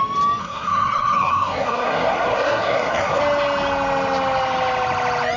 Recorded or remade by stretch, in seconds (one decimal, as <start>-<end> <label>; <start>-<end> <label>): 0.0-0.4 recorded; 0.4-3.2 remade; 3.2-5.4 recorded